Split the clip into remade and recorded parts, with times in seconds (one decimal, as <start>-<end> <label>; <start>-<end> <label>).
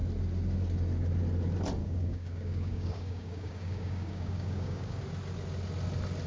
0.0-1.8 recorded; 1.8-5.0 remade; 5.0-6.3 recorded